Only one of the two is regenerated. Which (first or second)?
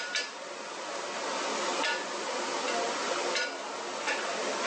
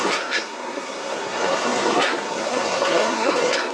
second